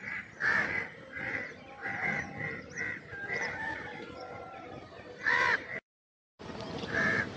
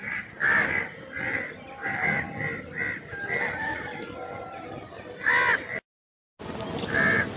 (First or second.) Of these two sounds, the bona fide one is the second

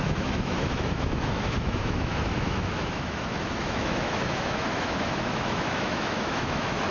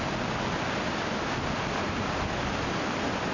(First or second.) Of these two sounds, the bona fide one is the second